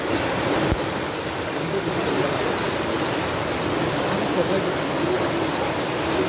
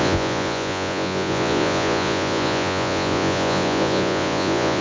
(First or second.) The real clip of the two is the first